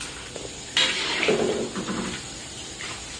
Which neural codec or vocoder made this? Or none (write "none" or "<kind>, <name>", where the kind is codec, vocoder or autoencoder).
none